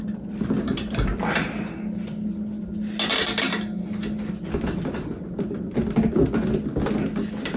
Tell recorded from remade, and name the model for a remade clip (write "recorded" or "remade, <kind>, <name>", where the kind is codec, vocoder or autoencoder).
recorded